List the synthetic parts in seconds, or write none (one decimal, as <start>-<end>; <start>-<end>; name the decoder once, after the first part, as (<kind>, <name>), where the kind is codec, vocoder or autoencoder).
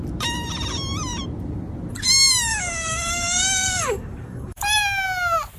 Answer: 2.5-4.6 (codec, DAC)